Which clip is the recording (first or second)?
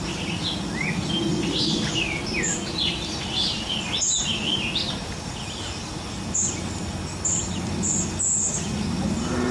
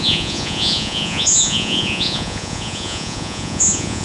first